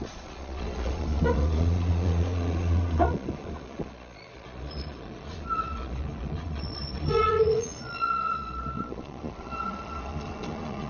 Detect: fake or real fake